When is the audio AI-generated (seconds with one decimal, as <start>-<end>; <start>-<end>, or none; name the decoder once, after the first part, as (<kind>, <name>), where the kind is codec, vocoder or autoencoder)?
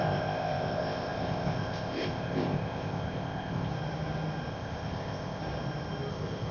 0.0-3.7 (codec, ZipCodec); 4.5-5.4; 6.1-6.5